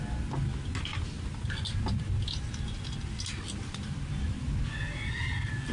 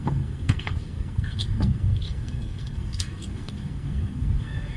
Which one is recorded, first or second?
first